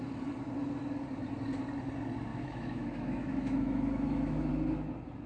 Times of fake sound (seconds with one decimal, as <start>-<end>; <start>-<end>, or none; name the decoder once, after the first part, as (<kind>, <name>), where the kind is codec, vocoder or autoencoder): 2.3-4.5 (autoencoder, DAC-VAE)